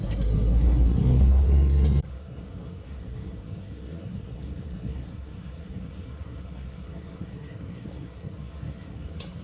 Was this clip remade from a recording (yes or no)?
yes